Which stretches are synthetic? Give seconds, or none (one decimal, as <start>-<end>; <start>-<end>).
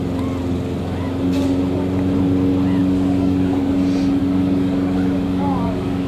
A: 2.8-3.7; 4.2-6.1